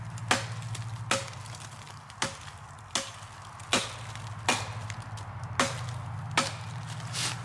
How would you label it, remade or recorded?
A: recorded